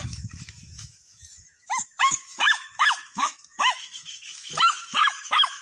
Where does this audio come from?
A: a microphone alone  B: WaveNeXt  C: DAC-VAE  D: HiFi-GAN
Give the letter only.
C